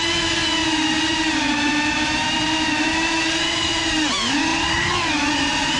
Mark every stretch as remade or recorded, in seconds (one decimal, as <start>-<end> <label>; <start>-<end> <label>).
0.0-0.6 recorded; 0.6-4.1 remade; 4.1-4.5 recorded; 4.5-5.8 remade

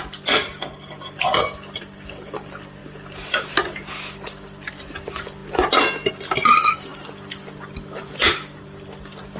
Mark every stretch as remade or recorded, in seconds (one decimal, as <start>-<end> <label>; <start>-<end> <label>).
0.0-9.4 recorded